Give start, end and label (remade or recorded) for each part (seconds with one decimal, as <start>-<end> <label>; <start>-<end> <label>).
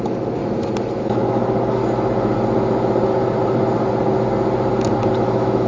0.0-0.4 remade; 0.4-1.0 recorded; 1.0-1.8 remade; 1.8-5.2 recorded; 5.2-5.7 remade